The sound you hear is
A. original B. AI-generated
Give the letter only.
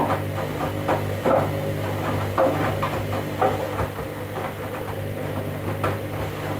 A